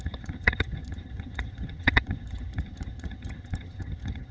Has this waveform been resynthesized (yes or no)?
yes